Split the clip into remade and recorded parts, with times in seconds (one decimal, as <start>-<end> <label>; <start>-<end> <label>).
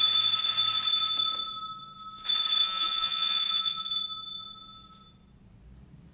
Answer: 0.0-2.6 recorded; 2.6-4.0 remade; 4.0-6.1 recorded